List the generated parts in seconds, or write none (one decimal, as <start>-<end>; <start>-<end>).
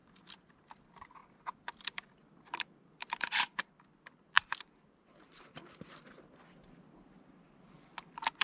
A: 1.2-3.8